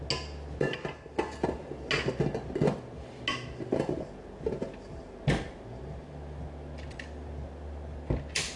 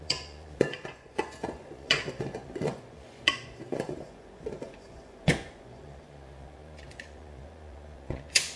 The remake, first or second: second